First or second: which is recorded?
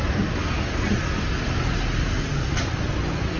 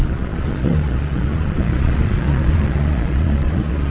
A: first